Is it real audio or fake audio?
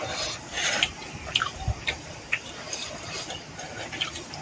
fake